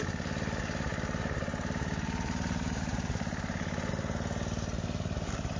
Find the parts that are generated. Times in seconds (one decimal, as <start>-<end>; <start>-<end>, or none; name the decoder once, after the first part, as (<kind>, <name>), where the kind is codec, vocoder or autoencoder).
0.9-3.9 (vocoder, BigVGAN v2)